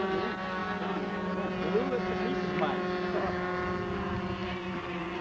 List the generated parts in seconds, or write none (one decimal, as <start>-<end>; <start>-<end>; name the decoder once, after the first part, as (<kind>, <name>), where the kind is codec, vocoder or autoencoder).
4.4-5.2 (vocoder, BigVGAN v2)